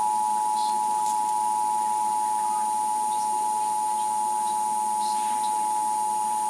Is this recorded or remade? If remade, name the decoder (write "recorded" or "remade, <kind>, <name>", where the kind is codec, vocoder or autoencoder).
recorded